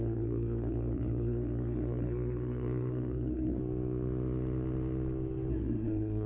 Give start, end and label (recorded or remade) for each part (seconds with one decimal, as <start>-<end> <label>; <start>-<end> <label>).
0.0-3.6 remade; 3.6-5.5 recorded; 5.5-6.3 remade